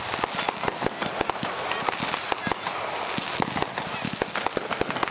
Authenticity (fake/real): real